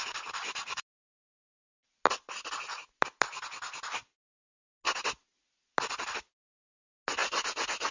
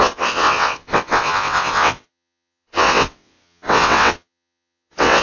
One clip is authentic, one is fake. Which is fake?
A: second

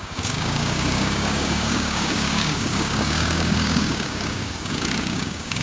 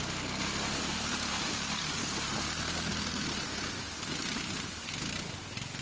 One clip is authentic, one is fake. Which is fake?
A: first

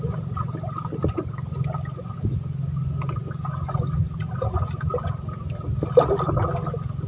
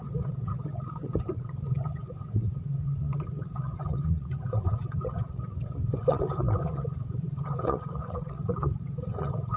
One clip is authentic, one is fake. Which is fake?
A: second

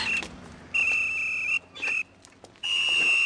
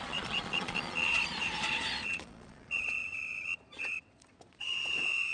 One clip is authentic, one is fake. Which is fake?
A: second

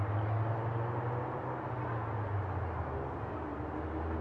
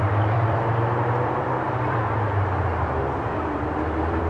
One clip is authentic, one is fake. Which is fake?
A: second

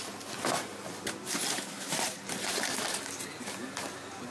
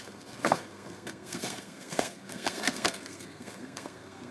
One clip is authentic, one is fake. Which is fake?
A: second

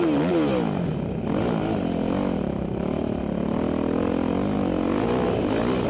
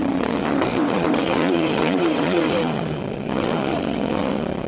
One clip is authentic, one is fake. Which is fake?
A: second